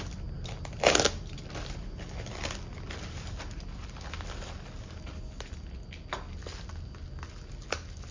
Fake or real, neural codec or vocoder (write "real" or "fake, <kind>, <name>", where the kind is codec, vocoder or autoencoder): real